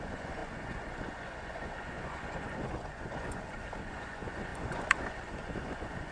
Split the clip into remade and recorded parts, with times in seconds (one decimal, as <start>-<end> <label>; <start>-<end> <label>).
0.0-6.1 remade

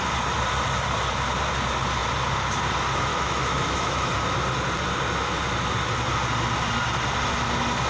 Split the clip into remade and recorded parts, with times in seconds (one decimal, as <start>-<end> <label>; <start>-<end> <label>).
0.0-3.1 recorded; 3.1-4.1 remade; 4.1-7.9 recorded

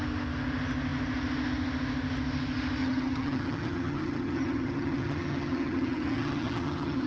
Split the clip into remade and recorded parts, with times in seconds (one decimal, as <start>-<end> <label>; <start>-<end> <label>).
0.0-2.8 recorded; 2.8-7.1 remade